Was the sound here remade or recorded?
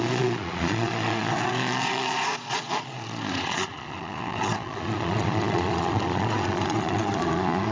remade